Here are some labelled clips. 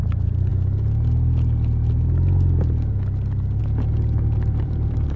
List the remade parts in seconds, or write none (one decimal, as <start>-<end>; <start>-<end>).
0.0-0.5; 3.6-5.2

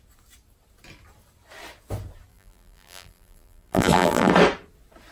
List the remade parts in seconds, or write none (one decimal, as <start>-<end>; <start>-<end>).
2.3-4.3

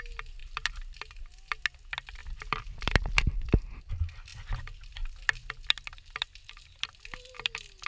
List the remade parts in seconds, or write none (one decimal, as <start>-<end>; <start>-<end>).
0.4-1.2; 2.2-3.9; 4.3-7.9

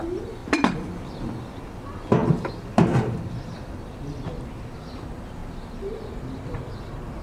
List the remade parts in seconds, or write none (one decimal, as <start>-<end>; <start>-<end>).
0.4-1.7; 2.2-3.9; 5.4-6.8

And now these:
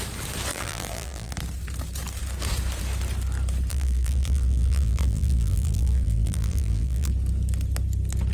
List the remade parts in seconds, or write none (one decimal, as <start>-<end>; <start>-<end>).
0.5-1.3; 3.7-7.1

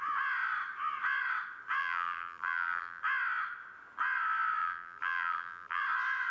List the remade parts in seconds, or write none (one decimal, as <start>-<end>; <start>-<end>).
1.8-3.0; 4.6-5.8

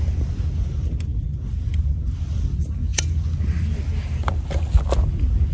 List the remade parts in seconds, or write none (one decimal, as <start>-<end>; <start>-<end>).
none

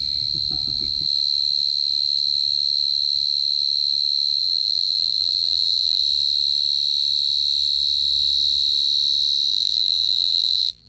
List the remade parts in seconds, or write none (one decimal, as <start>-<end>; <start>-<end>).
4.4-6.0; 9.5-10.9